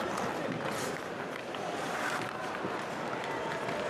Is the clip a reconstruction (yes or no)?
no